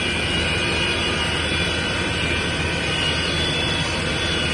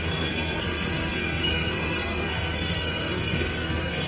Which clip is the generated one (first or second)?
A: second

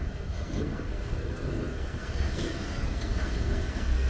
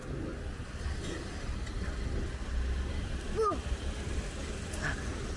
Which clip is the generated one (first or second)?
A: first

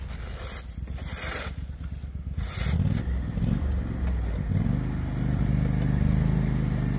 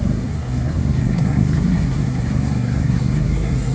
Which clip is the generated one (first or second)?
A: second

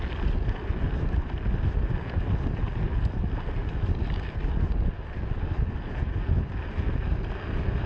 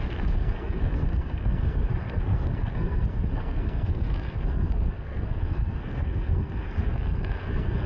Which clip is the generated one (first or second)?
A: second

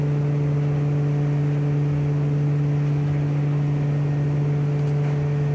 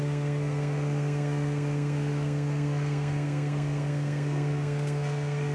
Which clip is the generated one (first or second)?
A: second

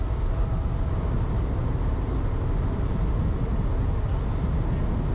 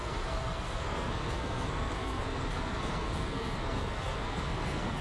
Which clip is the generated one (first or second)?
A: second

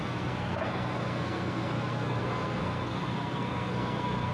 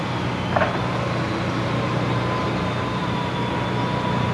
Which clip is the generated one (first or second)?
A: first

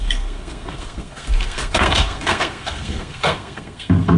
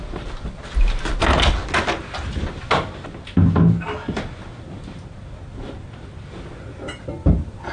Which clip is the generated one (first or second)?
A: first